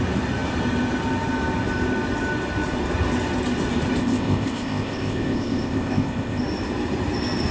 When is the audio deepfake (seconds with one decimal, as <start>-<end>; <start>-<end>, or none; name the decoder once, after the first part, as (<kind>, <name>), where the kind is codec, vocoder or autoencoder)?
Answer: 4.0-6.4 (codec, ZipCodec)